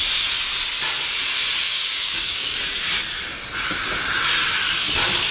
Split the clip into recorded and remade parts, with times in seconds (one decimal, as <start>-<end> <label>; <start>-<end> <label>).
0.0-1.6 recorded; 1.6-2.6 remade; 2.6-5.3 recorded